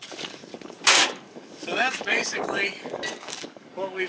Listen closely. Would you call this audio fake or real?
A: fake